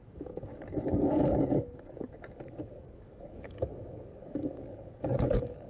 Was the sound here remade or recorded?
remade